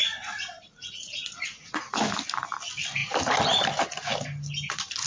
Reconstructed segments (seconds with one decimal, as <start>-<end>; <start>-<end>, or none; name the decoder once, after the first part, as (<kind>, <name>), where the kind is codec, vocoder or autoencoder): 0.0-1.9 (vocoder, Vocos)